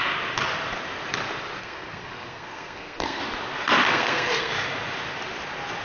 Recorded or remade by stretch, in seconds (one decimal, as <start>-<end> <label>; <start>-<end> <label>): 0.0-1.6 recorded; 1.6-3.2 remade; 3.2-3.9 recorded; 3.9-4.5 remade; 4.5-5.8 recorded